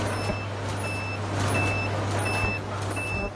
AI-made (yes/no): no